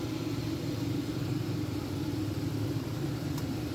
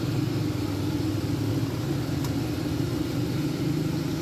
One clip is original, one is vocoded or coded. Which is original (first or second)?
second